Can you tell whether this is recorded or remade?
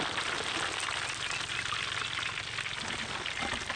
recorded